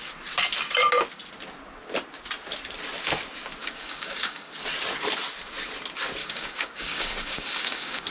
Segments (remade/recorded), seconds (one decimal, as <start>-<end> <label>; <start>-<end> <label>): 0.0-3.6 recorded; 3.6-4.5 remade; 4.5-6.2 recorded; 6.2-8.1 remade

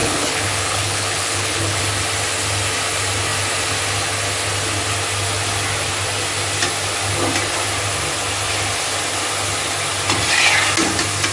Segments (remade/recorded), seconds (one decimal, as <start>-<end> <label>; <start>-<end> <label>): 0.0-1.8 remade; 1.8-11.3 recorded